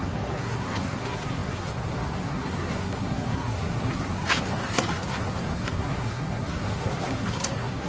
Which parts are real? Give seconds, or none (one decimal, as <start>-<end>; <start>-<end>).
none